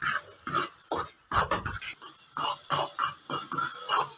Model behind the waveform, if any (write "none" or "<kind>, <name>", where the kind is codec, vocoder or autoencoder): none